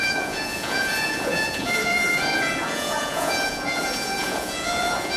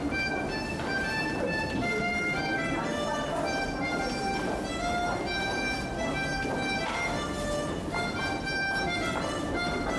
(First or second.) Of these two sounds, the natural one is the second